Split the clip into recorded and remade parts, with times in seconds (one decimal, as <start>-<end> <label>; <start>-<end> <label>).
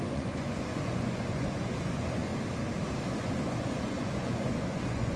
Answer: 0.0-2.3 remade; 2.3-3.1 recorded; 3.1-5.2 remade